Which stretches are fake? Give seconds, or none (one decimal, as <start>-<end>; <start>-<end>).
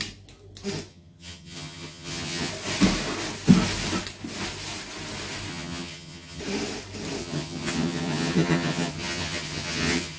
0.9-2.5; 5.5-6.4; 7.2-10.2